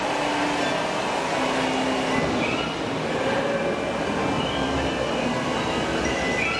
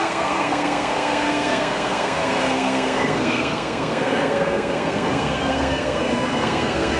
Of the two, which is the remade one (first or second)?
second